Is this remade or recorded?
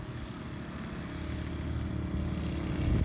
recorded